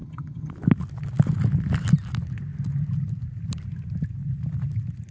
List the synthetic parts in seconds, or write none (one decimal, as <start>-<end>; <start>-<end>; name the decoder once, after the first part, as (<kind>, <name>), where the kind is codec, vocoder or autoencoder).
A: 0.0-0.5 (vocoder, HiFi-GAN)